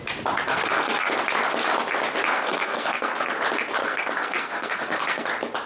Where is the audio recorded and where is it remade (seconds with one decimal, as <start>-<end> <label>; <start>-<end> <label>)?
0.0-0.5 recorded; 0.5-1.1 remade; 1.1-2.3 recorded; 2.3-3.3 remade; 3.3-3.8 recorded; 3.8-5.3 remade; 5.3-5.7 recorded